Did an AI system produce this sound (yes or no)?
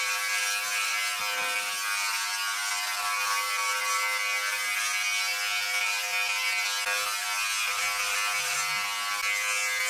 no